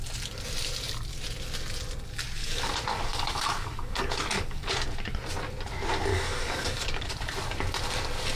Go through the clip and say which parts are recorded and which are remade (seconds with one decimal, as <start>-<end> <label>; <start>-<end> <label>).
0.0-2.4 recorded; 2.4-4.7 remade; 4.7-6.1 recorded; 6.1-7.1 remade; 7.1-8.4 recorded